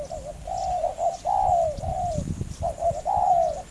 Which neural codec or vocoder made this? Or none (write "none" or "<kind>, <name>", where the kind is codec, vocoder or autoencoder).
none